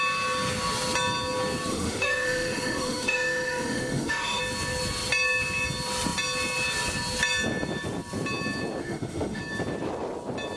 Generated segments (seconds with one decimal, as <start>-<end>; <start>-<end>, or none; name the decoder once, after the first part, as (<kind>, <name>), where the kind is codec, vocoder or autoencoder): 1.7-4.4 (autoencoder, DAC-VAE); 8.8-9.4